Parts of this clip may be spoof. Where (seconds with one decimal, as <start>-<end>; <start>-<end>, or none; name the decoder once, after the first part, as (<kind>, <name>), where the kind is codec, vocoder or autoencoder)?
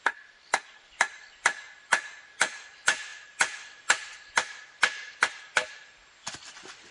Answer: none